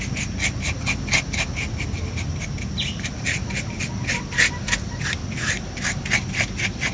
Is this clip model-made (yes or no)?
no